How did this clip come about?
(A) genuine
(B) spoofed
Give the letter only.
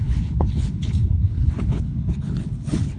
B